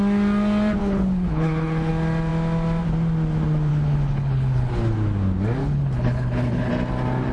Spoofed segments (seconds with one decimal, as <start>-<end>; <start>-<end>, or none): 0.8-1.9; 3.7-4.7; 5.6-6.7